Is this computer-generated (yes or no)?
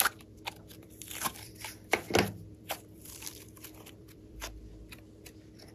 yes